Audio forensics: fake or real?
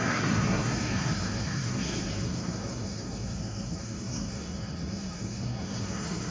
fake